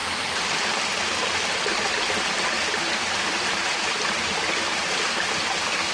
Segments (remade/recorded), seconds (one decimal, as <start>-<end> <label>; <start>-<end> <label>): 0.0-5.9 recorded